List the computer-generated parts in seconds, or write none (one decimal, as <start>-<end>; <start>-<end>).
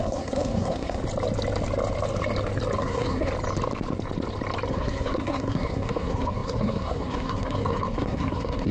0.0-1.0; 2.8-3.3; 4.7-8.7